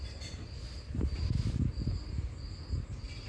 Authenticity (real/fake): real